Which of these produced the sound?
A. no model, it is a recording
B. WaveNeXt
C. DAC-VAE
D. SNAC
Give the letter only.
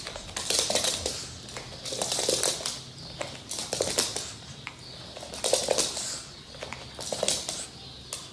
A